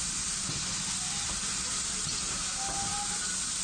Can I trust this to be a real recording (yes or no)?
yes